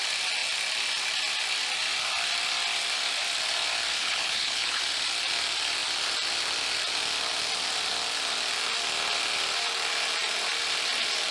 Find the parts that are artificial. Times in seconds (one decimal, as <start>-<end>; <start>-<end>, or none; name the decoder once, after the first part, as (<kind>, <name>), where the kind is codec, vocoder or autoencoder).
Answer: 4.0-4.8 (codec, HILCodec)